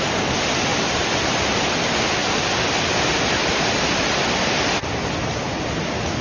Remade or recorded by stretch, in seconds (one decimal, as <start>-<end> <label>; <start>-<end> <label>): 0.0-0.7 recorded; 0.7-1.6 remade; 1.6-2.2 recorded; 2.2-4.4 remade; 4.4-6.2 recorded